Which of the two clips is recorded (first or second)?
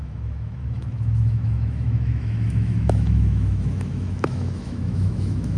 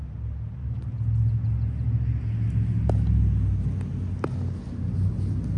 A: second